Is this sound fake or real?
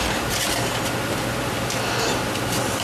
real